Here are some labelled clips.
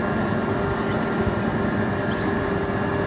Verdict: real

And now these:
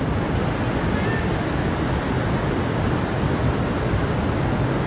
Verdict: real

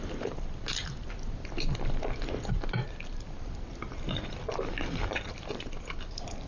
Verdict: fake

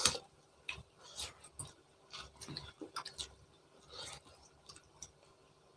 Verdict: real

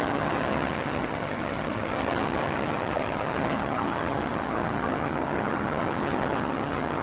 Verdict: fake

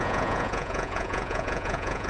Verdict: fake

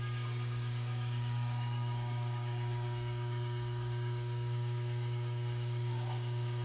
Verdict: fake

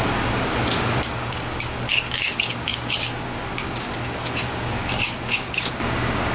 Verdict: fake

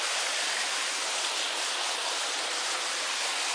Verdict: real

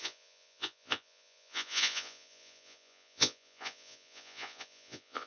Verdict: fake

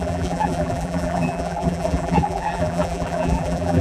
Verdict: fake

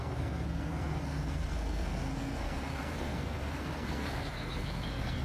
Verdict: fake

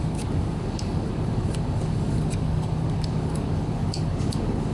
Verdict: fake